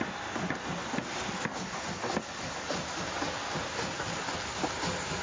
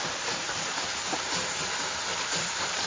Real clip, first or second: first